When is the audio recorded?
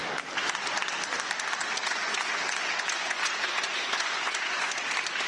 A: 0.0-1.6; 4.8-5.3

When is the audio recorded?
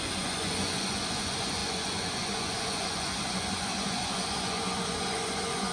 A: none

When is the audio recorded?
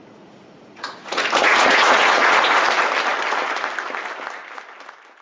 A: 2.6-5.2